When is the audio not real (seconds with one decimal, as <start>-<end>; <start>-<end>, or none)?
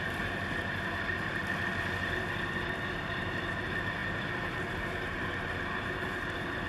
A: 0.0-1.4; 2.9-4.0; 4.7-6.7